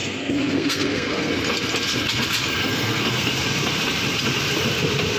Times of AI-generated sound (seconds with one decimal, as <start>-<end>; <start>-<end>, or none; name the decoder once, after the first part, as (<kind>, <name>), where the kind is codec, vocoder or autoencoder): 0.0-1.3 (codec, SNAC); 2.7-3.3